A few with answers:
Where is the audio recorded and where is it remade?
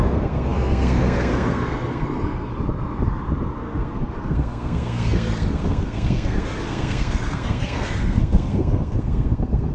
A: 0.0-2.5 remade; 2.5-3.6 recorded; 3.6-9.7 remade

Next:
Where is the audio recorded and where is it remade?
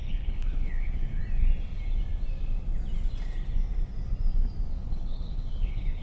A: 0.0-1.2 remade; 1.2-4.8 recorded; 4.8-6.0 remade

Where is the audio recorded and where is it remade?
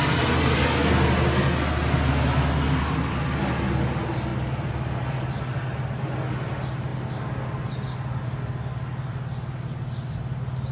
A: 0.0-10.7 recorded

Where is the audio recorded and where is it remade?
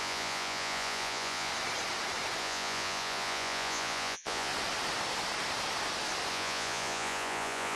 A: 0.0-1.5 remade; 1.5-2.4 recorded; 2.4-4.5 remade; 4.5-6.3 recorded; 6.3-7.8 remade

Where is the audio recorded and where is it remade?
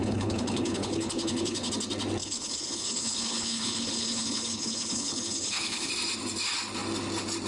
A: 0.0-1.7 remade; 1.7-2.2 recorded; 2.2-5.9 remade; 5.9-7.5 recorded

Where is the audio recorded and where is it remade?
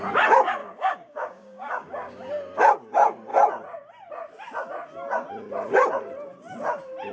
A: 0.0-0.6 recorded; 0.6-2.3 remade; 2.3-7.1 recorded